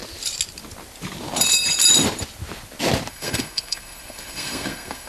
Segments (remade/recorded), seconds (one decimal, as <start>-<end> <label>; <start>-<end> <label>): 0.0-3.1 recorded; 3.1-5.1 remade